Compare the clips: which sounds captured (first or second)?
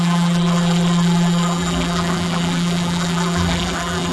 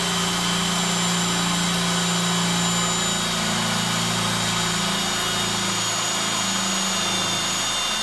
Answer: second